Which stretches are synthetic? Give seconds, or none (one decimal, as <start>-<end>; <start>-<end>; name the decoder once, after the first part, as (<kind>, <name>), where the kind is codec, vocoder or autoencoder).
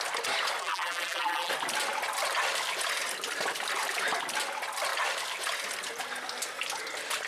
0.6-1.5 (vocoder, BigVGAN v2)